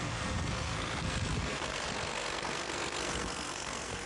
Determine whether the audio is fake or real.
fake